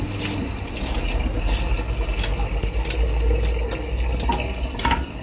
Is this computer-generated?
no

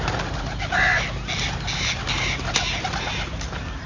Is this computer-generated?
no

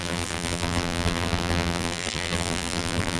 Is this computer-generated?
yes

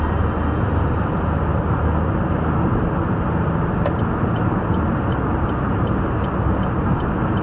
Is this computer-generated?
no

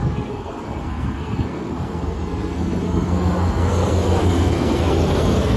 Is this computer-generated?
yes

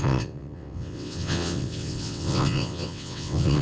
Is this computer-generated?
yes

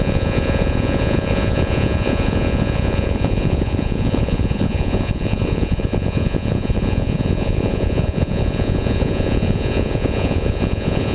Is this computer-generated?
yes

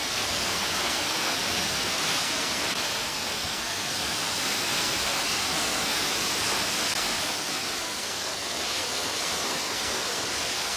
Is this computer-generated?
yes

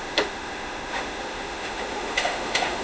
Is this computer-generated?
yes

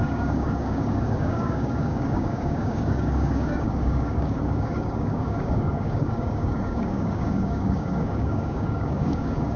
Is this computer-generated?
yes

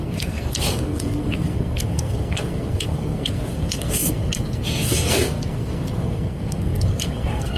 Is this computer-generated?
yes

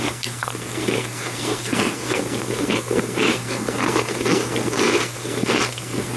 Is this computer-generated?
yes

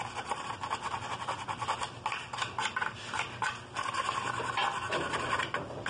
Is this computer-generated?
no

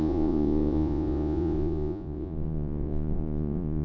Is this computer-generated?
yes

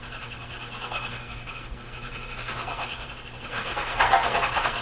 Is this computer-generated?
yes